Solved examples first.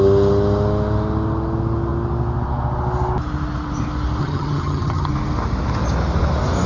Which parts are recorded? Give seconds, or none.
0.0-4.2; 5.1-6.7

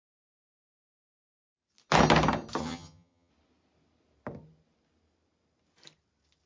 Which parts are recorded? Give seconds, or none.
0.0-2.6; 3.3-6.5

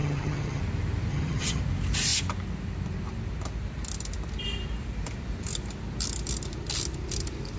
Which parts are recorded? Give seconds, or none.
0.6-1.1; 1.6-7.6

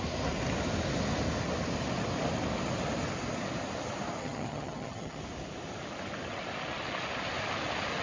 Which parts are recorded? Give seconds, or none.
0.0-4.2; 5.2-8.0

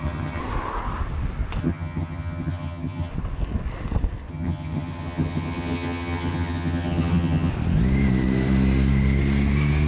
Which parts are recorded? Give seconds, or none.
0.4-1.6; 3.1-4.3; 7.5-9.9